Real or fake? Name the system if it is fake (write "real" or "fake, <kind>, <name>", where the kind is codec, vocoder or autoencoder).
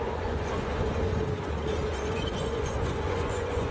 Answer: fake, vocoder, Vocos